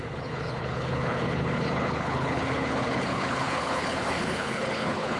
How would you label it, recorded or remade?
remade